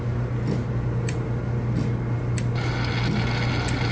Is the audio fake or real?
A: real